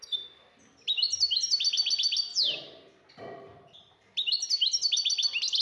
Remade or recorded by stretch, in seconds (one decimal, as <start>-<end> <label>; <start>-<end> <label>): 0.0-5.6 recorded